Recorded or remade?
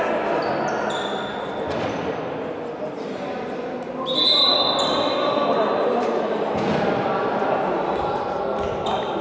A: recorded